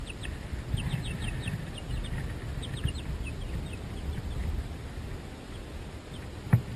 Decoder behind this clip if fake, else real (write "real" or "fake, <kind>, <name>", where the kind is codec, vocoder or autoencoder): real